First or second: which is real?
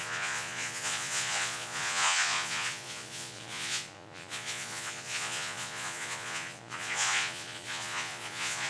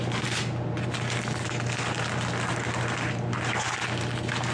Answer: second